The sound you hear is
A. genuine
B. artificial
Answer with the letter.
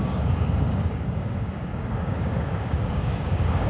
B